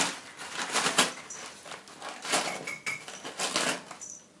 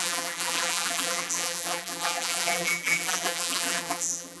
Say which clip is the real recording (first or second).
first